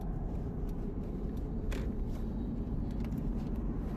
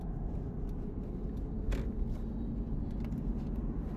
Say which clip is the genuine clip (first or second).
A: second